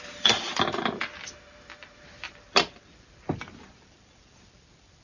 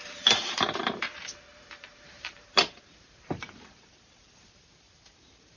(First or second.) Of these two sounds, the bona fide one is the first